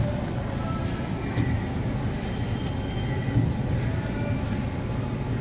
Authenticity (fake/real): real